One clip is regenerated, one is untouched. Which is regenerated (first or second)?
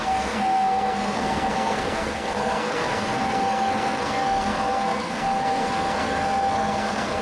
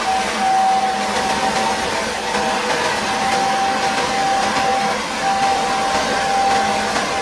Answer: first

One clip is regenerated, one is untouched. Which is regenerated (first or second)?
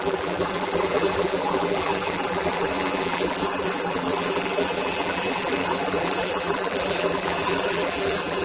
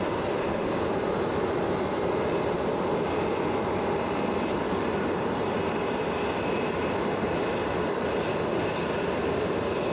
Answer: first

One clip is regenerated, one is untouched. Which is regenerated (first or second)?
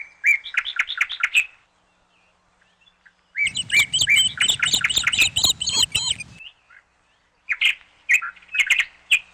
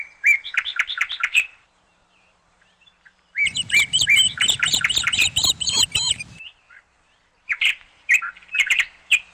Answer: second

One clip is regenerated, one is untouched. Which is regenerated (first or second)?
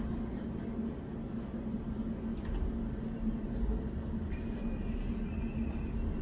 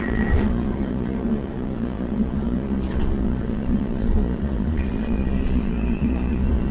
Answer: second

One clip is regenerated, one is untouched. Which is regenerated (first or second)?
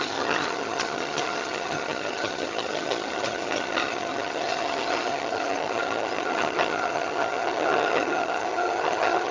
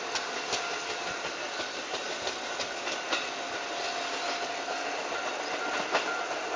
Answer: first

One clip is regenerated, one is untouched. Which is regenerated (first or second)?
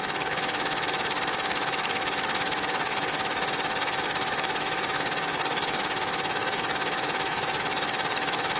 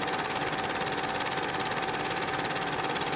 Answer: first